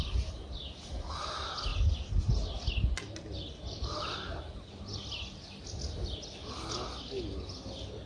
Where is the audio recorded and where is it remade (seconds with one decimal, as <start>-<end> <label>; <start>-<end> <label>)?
0.0-8.1 recorded